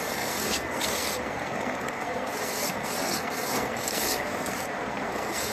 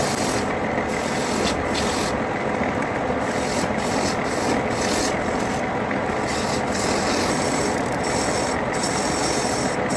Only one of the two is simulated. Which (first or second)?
first